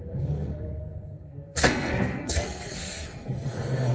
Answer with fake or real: fake